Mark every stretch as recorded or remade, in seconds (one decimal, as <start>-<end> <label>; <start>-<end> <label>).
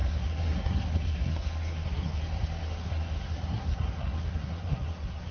0.0-2.2 remade; 2.2-2.6 recorded; 2.6-5.3 remade